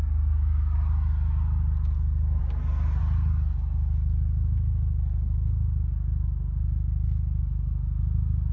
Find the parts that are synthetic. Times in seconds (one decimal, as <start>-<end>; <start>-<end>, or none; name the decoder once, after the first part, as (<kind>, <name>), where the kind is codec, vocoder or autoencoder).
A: none